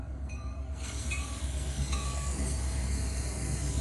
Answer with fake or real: fake